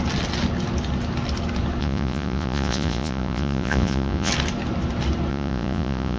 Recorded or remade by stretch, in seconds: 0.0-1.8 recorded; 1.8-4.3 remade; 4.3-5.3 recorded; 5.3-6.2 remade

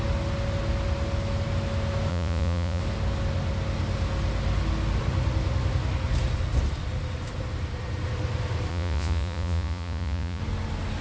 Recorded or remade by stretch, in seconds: 0.0-2.1 recorded; 2.1-2.8 remade; 2.8-8.7 recorded; 8.7-10.4 remade; 10.4-11.0 recorded

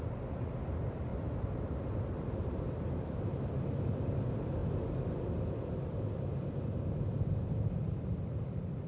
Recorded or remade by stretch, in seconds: 0.0-8.9 recorded

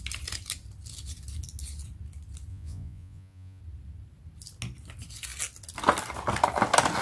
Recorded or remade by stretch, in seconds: 0.0-2.5 recorded; 2.5-3.6 remade; 3.6-7.0 recorded

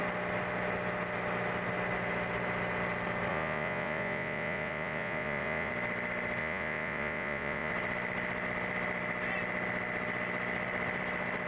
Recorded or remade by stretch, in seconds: 0.0-3.3 recorded; 3.3-5.7 remade; 5.7-6.4 recorded; 6.4-7.7 remade; 7.7-11.5 recorded

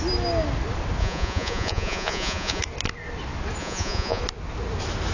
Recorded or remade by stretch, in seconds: 0.0-1.0 recorded; 1.0-2.6 remade; 2.6-3.6 recorded; 3.6-4.2 remade; 4.2-5.1 recorded

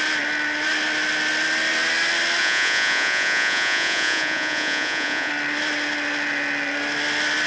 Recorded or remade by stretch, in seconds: 0.0-2.4 recorded; 2.4-5.3 remade; 5.3-7.5 recorded

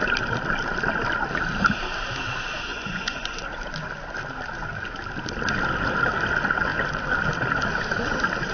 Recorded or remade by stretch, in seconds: 0.0-2.7 recorded; 2.7-3.4 remade; 3.4-8.5 recorded